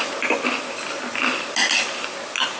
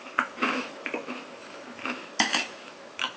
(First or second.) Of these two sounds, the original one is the first